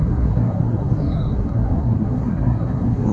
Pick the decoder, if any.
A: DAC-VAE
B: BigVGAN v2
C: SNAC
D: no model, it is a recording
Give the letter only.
C